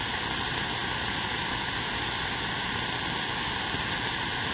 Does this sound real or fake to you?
real